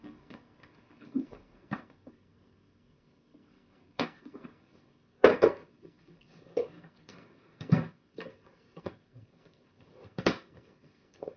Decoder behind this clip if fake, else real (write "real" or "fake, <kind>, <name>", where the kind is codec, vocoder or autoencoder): fake, codec, SNAC